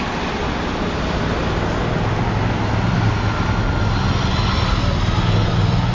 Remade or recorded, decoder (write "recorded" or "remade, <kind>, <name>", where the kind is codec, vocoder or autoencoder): recorded